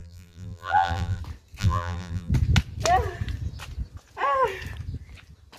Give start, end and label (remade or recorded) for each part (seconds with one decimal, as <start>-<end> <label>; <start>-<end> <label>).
0.0-1.2 remade; 1.2-1.6 recorded; 1.6-2.3 remade; 2.3-5.6 recorded